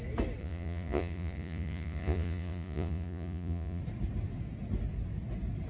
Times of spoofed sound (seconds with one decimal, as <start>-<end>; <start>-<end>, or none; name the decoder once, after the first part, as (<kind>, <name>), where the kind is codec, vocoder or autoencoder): 0.4-3.8 (vocoder, Vocos)